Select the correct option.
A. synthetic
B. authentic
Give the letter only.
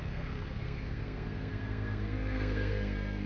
A